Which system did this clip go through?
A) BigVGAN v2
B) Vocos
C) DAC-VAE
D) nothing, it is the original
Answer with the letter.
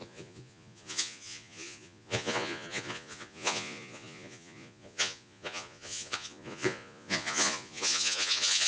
B